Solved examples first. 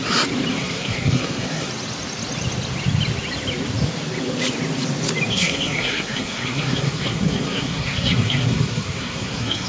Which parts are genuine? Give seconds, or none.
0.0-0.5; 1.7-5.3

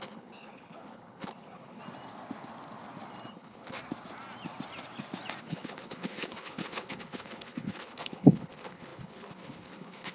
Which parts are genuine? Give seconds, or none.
1.8-3.3; 3.8-5.4

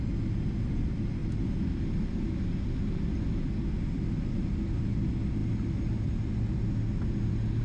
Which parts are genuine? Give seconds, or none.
0.0-7.6

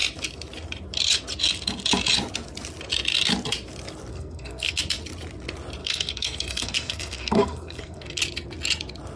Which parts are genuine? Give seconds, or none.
0.0-4.1; 4.8-5.8; 8.2-9.2

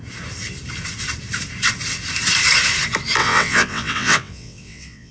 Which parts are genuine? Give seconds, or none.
0.0-3.2

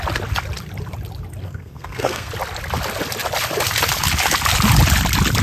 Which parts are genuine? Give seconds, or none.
0.0-1.4; 2.3-5.4

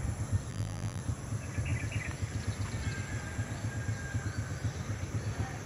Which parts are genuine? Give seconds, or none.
0.0-0.5; 1.0-5.7

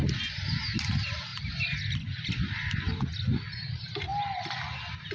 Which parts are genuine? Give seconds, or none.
0.0-5.1